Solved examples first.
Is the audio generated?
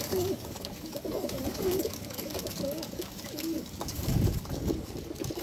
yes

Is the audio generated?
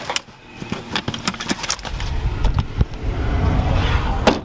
no